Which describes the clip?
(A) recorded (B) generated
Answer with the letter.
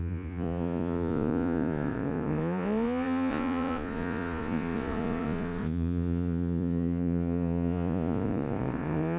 B